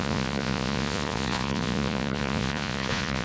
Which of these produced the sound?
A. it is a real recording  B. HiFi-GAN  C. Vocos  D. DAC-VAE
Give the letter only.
C